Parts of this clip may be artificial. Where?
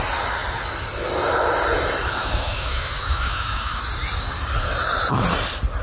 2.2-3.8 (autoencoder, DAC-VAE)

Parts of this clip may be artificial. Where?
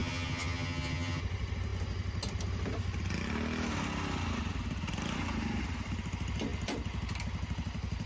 0.0-1.2 (vocoder, HiFi-GAN)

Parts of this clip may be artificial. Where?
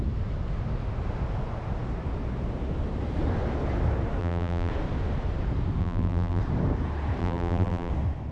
4.2-4.7 (vocoder, BigVGAN v2); 5.8-6.4; 7.2-7.9